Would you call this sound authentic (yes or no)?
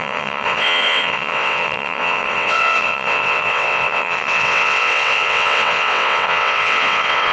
no